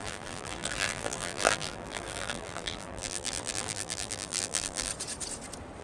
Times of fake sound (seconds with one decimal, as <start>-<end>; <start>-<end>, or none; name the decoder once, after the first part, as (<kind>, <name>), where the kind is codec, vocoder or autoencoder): 0.0-4.9 (vocoder, BigVGAN v2)